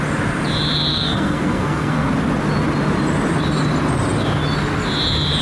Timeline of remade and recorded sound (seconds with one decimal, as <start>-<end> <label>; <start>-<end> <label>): 0.0-0.9 recorded; 0.9-2.1 remade; 2.1-5.4 recorded